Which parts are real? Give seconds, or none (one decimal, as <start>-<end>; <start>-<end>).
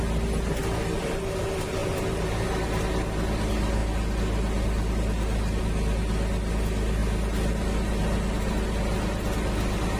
0.0-10.0